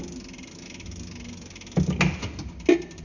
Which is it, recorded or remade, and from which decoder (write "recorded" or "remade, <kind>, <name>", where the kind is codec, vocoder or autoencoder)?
recorded